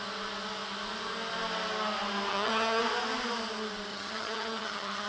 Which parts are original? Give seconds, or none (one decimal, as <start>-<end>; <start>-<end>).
0.0-2.3; 2.8-3.9